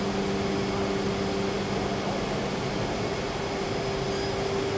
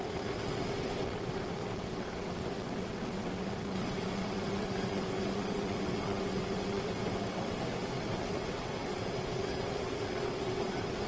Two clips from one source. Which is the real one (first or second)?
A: first